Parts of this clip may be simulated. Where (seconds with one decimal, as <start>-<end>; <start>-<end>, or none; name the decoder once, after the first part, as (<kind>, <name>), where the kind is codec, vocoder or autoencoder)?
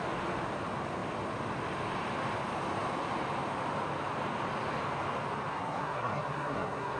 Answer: 5.5-7.0 (codec, SNAC)